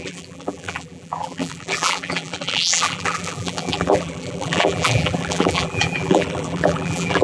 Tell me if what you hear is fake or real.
fake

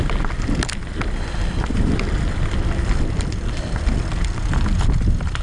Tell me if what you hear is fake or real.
real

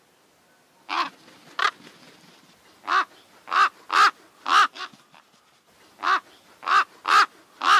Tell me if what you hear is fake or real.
real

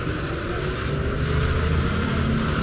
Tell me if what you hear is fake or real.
real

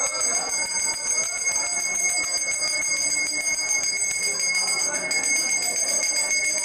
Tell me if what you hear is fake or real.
real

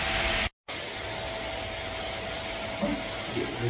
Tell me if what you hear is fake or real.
real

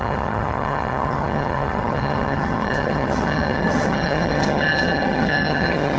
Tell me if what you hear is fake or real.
fake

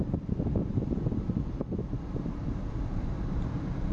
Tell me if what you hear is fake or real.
real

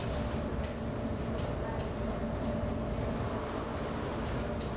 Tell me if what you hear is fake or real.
real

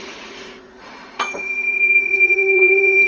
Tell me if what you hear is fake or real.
fake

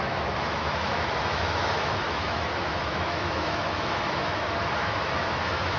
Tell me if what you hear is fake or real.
fake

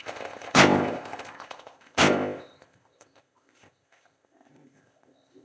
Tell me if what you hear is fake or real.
fake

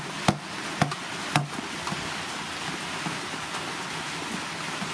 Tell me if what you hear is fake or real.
real